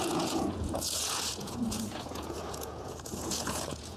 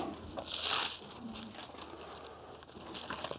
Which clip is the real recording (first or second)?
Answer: second